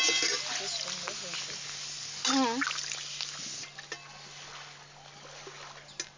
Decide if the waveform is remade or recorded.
recorded